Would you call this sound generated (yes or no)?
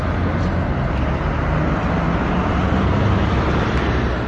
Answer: no